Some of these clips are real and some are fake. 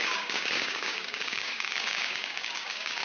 fake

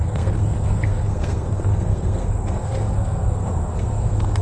fake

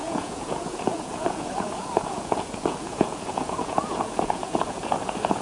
fake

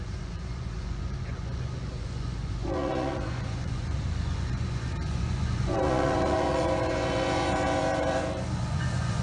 fake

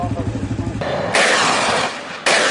real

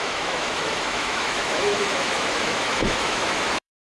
fake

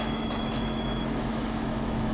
fake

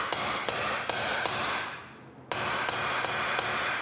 real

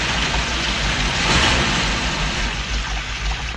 fake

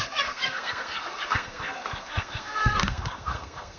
fake